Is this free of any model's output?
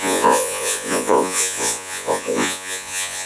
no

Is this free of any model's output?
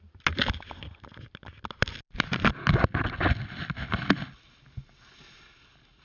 yes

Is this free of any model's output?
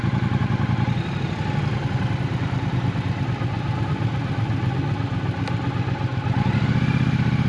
yes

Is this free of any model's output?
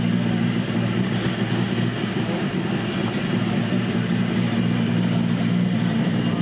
yes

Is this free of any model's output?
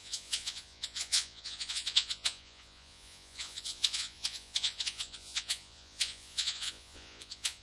no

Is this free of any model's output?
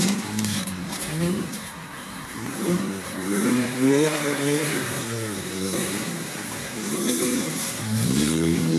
no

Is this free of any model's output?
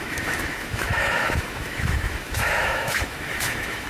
no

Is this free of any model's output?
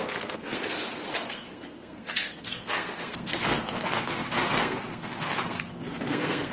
no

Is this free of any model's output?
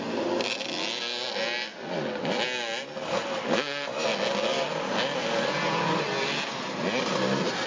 yes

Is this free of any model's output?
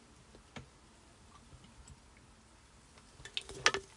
yes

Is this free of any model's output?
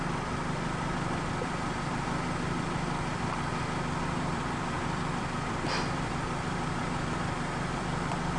no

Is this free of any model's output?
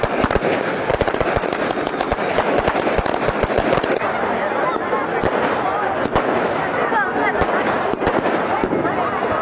yes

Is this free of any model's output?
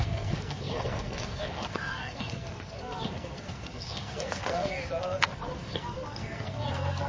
no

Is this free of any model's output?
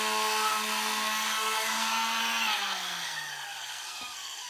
no